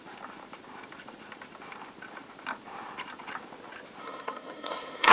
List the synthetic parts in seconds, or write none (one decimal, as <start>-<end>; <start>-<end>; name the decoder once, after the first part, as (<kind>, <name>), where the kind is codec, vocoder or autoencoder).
4.0-5.1 (codec, SNAC)